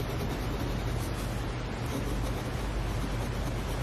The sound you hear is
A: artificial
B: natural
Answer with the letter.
B